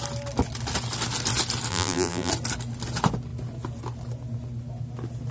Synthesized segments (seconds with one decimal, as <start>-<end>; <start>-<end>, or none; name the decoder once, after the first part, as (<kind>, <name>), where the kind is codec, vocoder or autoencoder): 1.7-2.3 (vocoder, BigVGAN v2)

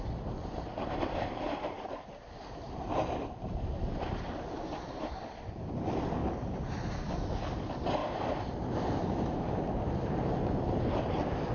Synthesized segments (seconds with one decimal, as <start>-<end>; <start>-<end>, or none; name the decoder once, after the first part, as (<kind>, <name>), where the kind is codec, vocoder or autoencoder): 0.7-2.2 (vocoder, BigVGAN v2); 8.0-10.1